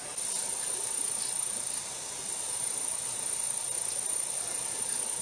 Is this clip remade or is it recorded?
recorded